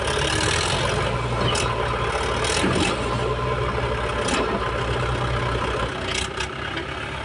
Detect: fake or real real